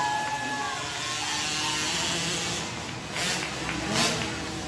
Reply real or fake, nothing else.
real